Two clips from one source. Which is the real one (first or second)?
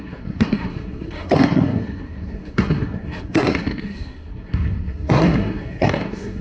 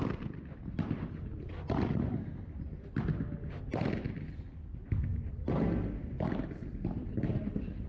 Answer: second